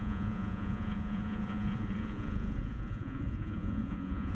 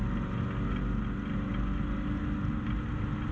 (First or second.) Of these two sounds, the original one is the second